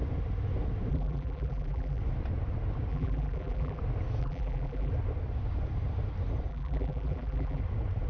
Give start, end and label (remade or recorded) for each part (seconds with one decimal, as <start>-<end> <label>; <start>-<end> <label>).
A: 0.0-0.9 recorded; 0.9-2.0 remade; 2.0-2.9 recorded; 2.9-3.8 remade; 3.8-4.2 recorded; 4.2-4.9 remade; 4.9-6.5 recorded; 6.5-7.6 remade; 7.6-8.1 recorded